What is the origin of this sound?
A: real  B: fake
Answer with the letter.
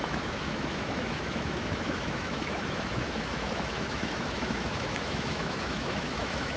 B